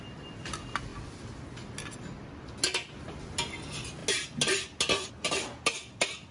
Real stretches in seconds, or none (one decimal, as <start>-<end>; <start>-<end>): 0.0-6.3